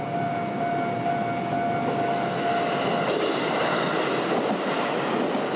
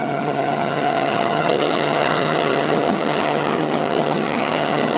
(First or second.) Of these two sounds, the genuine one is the first